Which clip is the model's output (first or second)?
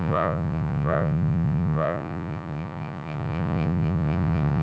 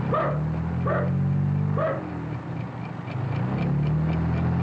first